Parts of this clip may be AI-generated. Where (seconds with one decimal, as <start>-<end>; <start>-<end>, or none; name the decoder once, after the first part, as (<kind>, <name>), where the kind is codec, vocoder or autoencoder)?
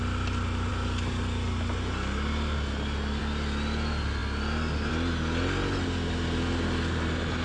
none